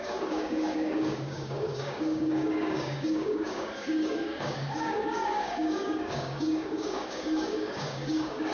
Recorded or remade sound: remade